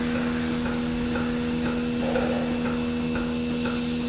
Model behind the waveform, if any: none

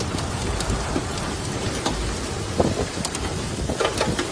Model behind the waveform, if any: none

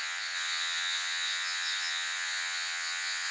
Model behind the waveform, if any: vocoder, Vocos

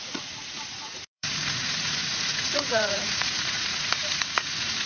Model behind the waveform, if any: vocoder, Vocos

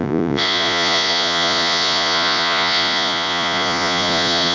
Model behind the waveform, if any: vocoder, Vocos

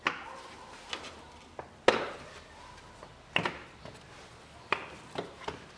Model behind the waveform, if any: none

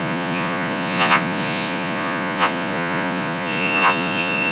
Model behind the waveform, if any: vocoder, Vocos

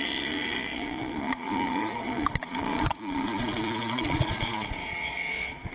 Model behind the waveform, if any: vocoder, Vocos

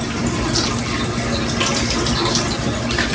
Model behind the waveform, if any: none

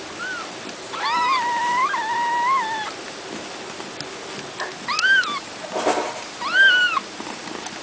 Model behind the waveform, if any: none